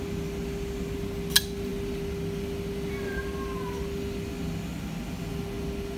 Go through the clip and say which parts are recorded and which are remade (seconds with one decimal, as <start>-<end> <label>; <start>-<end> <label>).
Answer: 0.0-6.0 recorded